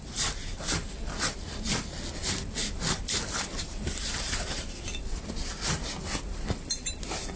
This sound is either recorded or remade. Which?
recorded